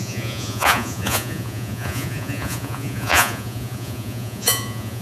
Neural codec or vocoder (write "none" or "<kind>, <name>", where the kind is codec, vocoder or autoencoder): vocoder, Vocos